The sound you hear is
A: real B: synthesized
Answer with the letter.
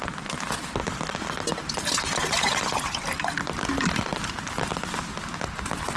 A